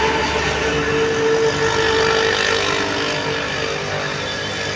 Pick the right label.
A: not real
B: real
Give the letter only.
B